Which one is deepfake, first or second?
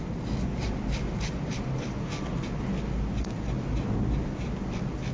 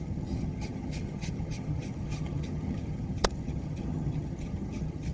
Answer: second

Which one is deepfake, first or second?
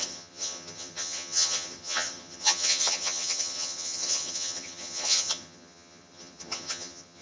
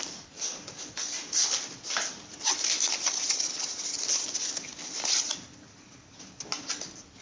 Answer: first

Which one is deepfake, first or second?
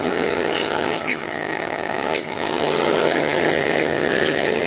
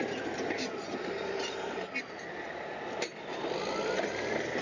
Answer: first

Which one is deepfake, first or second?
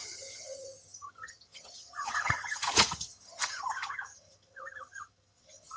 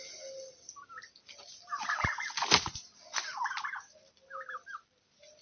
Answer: first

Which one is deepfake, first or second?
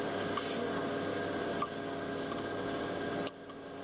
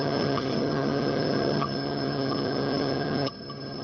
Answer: second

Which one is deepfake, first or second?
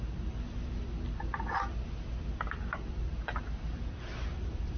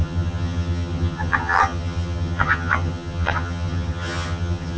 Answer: second